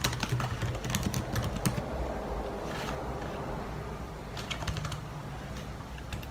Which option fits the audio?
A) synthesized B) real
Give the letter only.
B